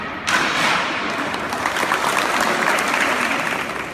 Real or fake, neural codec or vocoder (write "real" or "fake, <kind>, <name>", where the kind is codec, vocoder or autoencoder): real